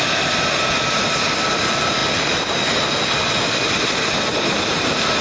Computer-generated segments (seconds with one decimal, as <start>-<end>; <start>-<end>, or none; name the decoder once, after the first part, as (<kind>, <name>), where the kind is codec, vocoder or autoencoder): none